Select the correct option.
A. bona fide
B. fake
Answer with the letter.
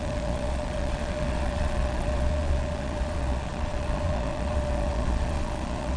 B